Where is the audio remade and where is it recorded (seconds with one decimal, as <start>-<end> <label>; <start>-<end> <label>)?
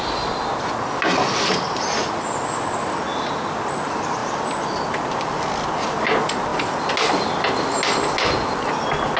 0.0-9.2 recorded